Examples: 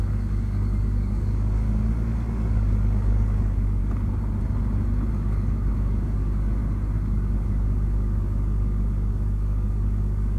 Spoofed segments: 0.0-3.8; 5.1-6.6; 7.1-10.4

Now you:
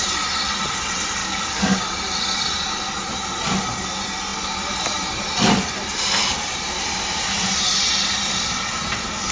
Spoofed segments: 1.2-1.8